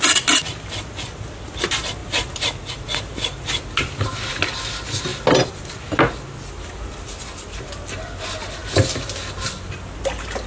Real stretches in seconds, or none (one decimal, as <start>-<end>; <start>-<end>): 0.0-10.5